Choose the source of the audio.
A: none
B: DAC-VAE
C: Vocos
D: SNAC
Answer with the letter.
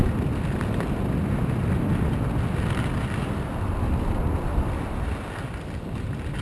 A